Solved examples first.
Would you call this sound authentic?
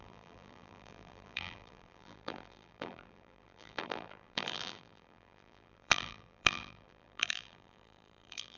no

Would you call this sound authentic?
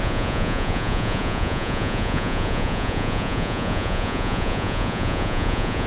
no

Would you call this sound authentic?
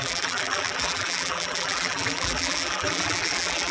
no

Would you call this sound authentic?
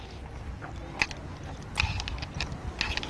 yes